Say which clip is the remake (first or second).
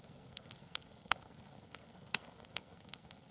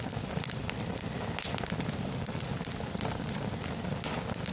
first